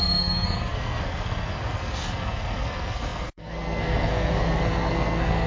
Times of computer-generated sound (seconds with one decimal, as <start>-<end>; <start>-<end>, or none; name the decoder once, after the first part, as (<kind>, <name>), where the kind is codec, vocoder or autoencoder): 0.0-5.5 (codec, SNAC)